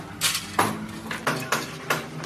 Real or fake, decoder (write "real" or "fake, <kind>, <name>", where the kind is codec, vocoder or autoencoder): real